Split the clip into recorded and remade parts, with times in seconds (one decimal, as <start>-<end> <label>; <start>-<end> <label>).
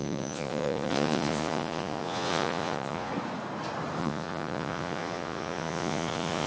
0.0-3.1 remade; 3.1-4.0 recorded; 4.0-6.5 remade